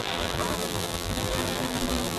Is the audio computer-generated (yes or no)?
yes